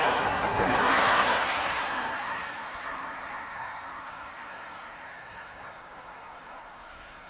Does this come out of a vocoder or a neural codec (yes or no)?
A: yes